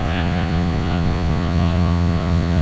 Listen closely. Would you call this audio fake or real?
fake